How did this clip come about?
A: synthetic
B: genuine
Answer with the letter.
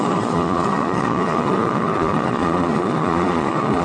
A